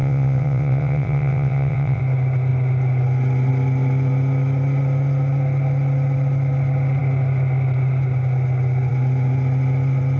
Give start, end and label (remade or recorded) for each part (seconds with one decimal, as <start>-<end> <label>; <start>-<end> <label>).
0.0-2.0 remade; 2.0-10.2 recorded